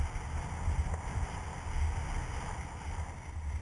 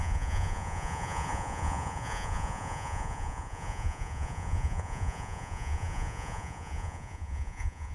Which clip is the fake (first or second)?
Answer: second